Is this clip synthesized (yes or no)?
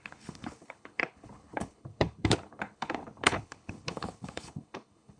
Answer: yes